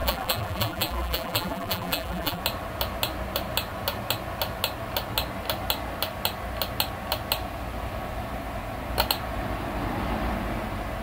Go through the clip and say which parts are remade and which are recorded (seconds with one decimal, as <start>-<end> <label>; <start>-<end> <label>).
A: 0.0-2.4 remade; 2.4-11.0 recorded